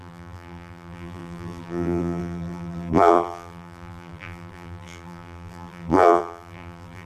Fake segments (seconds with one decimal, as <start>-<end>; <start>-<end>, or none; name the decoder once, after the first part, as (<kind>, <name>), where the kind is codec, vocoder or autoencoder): 0.0-7.1 (vocoder, BigVGAN v2)